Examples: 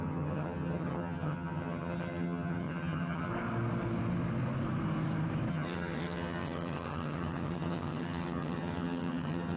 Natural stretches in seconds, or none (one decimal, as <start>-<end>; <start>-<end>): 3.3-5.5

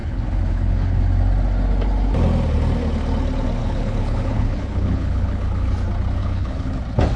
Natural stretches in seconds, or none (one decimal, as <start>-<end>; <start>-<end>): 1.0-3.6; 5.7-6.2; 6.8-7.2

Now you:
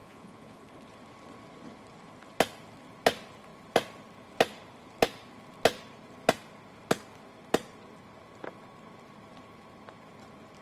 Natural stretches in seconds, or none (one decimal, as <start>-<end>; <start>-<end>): 0.6-10.6

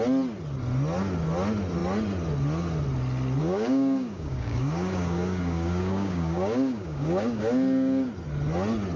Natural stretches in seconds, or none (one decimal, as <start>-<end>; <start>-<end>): 0.0-3.4; 8.1-9.0